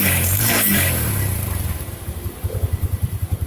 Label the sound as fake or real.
fake